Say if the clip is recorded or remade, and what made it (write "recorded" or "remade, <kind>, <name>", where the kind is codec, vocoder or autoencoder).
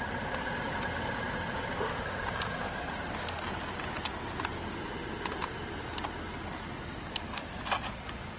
recorded